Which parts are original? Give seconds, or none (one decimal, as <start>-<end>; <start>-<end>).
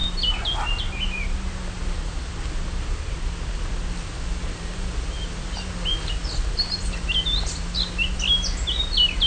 0.0-9.3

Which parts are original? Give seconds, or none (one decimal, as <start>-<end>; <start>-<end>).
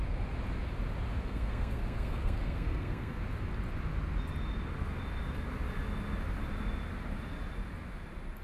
0.0-1.2; 3.2-8.4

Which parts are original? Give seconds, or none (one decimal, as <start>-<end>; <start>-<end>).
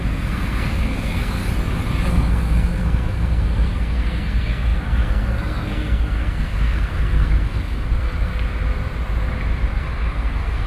1.4-2.1; 8.3-9.7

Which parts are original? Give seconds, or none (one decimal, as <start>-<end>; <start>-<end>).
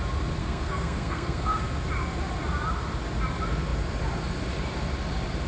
0.0-0.4; 1.6-5.5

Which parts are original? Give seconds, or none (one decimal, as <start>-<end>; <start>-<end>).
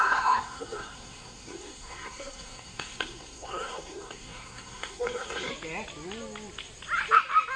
5.5-7.6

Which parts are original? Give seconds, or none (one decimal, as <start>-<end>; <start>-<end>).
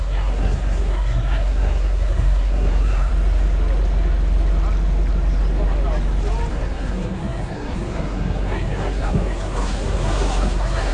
3.1-6.5